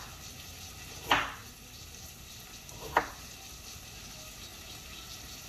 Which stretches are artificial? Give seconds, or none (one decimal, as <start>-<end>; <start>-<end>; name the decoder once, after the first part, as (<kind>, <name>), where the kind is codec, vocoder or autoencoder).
none